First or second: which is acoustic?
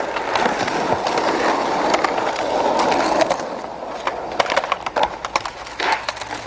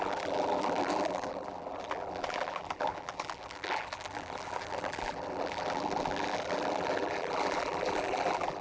first